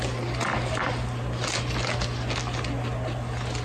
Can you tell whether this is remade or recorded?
recorded